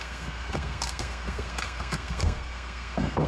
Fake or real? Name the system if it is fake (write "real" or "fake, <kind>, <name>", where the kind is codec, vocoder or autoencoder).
fake, codec, SNAC